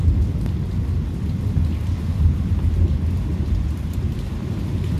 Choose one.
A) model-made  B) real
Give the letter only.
B